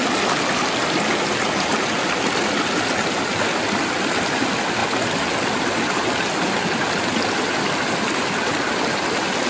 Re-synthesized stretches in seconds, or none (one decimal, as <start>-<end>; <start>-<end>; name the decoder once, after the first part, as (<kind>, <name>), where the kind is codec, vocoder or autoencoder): none